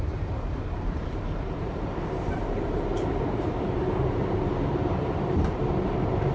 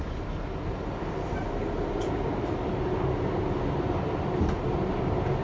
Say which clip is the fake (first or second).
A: first